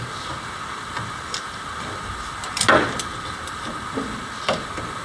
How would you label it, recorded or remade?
recorded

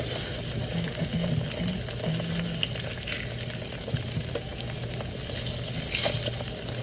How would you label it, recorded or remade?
recorded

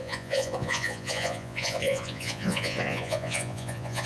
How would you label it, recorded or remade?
remade